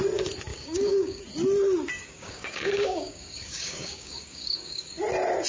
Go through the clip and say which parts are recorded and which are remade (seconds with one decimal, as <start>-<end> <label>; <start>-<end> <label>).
0.0-0.5 recorded; 0.5-1.2 remade; 1.2-2.0 recorded; 2.0-5.0 remade; 5.0-5.5 recorded